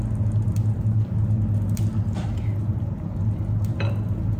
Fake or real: real